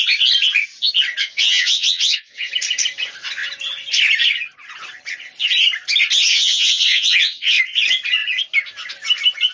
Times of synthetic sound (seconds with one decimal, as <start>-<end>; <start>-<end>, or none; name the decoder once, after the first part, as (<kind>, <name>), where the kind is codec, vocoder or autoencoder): 1.2-2.5 (vocoder, WaveNeXt); 6.3-7.6